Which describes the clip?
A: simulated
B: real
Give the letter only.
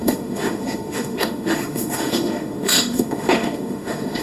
A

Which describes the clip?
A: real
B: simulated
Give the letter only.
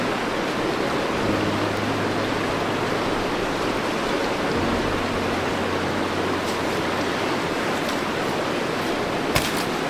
A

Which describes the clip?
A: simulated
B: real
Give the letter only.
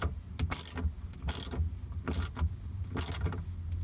B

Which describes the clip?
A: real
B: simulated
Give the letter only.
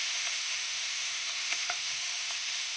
B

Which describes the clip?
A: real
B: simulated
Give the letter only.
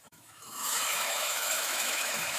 B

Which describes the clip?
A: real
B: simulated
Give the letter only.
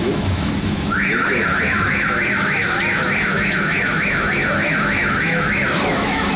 B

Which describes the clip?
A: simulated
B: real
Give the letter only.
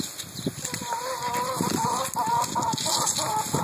B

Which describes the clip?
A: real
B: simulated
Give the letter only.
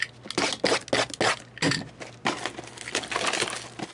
A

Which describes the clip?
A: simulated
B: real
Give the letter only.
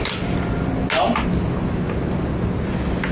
B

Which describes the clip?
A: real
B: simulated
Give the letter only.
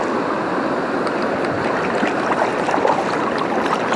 A